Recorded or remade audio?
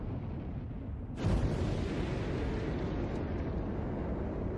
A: recorded